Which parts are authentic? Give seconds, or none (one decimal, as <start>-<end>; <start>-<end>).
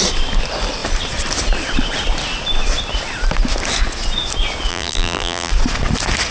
0.0-4.7; 5.5-6.3